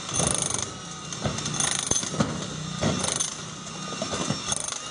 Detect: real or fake real